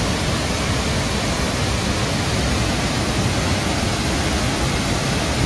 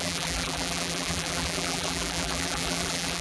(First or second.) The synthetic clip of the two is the second